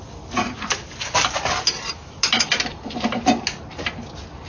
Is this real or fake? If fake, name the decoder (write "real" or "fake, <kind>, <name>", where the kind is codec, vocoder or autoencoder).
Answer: real